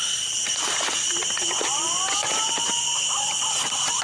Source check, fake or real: real